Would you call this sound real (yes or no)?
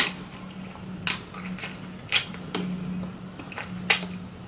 yes